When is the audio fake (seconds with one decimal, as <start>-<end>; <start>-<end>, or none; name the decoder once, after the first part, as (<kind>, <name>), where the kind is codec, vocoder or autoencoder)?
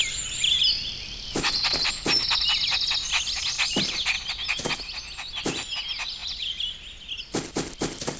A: none